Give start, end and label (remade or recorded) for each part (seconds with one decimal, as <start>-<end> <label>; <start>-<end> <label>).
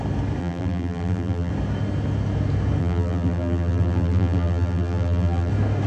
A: 0.0-0.4 recorded; 0.4-1.5 remade; 1.5-2.8 recorded; 2.8-5.5 remade; 5.5-5.9 recorded